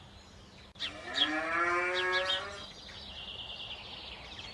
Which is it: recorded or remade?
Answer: recorded